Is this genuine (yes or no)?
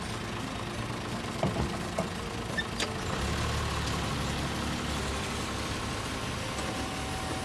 yes